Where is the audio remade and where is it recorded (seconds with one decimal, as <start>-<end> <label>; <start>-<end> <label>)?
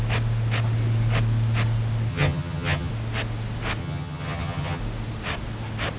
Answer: 0.0-2.1 recorded; 2.1-2.9 remade; 2.9-3.8 recorded; 3.8-4.8 remade; 4.8-6.0 recorded